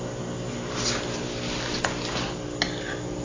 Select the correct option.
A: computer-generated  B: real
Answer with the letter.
B